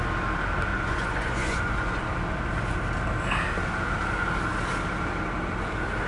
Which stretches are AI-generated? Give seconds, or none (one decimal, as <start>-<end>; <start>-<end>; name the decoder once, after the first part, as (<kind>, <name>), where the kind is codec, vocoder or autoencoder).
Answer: 0.7-2.0 (vocoder, Vocos)